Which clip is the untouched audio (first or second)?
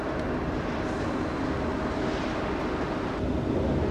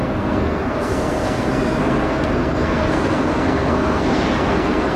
first